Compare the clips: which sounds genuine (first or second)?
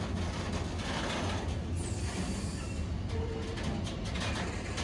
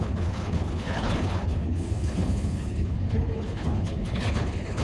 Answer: first